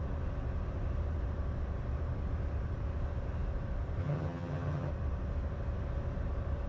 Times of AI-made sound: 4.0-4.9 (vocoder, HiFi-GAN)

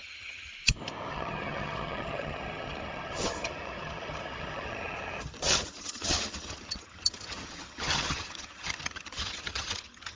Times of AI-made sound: 0.0-0.5 (vocoder, HiFi-GAN); 1.1-10.2

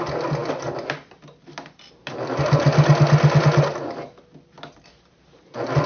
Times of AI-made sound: none

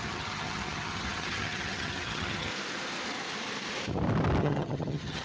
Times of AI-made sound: 0.0-2.5 (vocoder, HiFi-GAN); 4.4-5.2